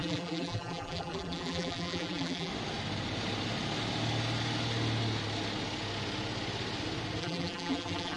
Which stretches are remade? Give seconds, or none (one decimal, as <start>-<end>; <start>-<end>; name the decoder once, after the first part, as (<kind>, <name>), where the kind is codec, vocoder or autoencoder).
0.0-2.5 (vocoder, BigVGAN v2); 7.2-8.2